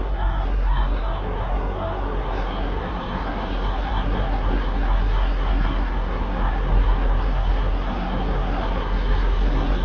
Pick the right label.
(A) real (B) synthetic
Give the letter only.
B